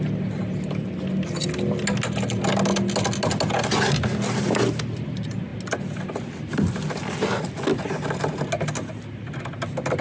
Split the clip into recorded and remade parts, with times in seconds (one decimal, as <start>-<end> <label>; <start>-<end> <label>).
0.0-10.0 recorded